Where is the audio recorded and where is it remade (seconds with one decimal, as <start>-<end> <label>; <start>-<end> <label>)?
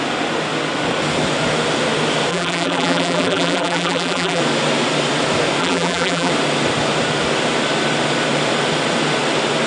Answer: 0.0-2.3 recorded; 2.3-4.4 remade; 4.4-5.6 recorded; 5.6-6.3 remade; 6.3-9.7 recorded